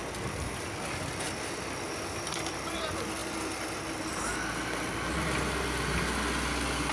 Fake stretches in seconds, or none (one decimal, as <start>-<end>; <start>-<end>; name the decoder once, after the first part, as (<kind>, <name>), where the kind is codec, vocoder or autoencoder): none